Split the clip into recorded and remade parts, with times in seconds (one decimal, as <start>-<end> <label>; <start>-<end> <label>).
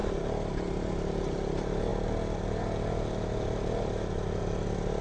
0.0-5.0 recorded